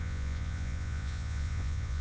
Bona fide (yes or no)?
no